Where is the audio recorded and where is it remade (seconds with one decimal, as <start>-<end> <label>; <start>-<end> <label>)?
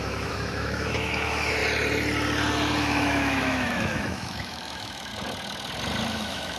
0.0-1.6 remade; 1.6-2.8 recorded; 2.8-5.1 remade; 5.1-6.1 recorded; 6.1-6.6 remade